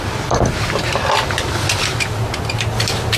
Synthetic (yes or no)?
no